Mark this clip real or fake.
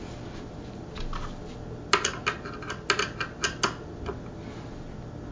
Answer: real